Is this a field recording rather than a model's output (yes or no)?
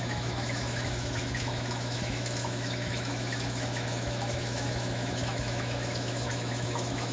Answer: no